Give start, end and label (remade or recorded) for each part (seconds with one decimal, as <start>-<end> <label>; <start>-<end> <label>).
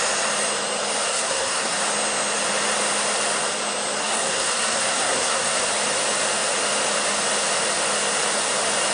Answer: 0.0-1.1 recorded; 1.1-1.9 remade; 1.9-4.0 recorded; 4.0-5.6 remade; 5.6-8.9 recorded